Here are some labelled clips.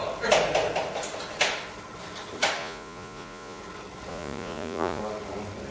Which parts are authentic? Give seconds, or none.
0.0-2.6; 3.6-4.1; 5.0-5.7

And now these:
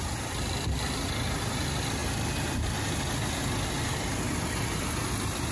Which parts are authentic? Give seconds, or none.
0.0-5.5

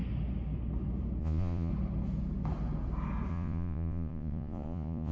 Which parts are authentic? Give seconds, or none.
0.0-1.2; 1.7-3.3

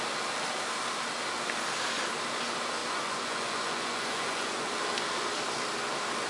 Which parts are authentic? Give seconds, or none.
0.0-2.8; 4.7-6.3

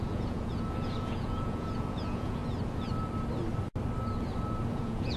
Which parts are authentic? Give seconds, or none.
2.4-4.7

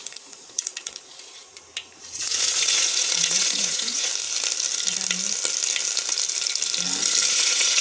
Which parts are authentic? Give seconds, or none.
4.1-7.3

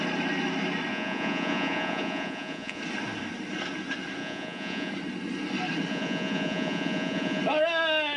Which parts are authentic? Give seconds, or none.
0.0-0.9; 2.8-4.2; 4.9-5.9; 7.4-8.2